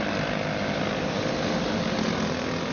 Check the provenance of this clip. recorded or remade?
recorded